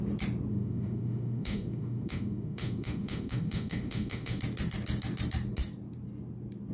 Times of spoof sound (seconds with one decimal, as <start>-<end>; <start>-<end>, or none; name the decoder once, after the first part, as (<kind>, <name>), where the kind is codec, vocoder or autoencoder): 0.5-4.4 (autoencoder, DAC-VAE)